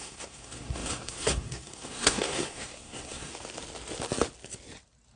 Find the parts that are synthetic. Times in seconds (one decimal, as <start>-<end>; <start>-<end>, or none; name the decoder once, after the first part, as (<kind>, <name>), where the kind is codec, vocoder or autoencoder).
0.0-3.3 (codec, SNAC)